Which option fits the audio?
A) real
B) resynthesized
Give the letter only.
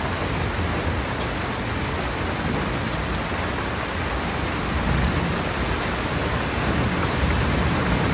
A